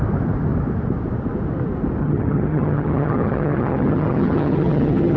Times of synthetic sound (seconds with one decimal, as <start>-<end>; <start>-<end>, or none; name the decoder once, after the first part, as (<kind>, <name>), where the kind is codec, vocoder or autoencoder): 2.0-5.2 (vocoder, HiFi-GAN)